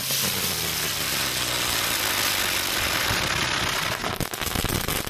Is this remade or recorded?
recorded